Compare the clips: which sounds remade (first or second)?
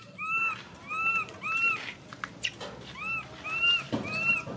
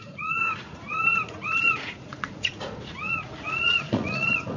second